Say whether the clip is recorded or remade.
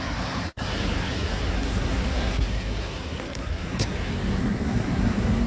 remade